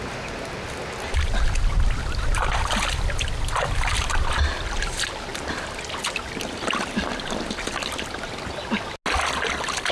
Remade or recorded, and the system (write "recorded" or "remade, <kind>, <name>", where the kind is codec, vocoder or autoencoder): recorded